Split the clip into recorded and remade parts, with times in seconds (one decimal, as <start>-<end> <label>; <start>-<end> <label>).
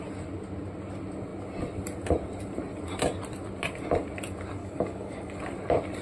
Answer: 0.0-4.6 recorded; 4.6-5.4 remade; 5.4-6.0 recorded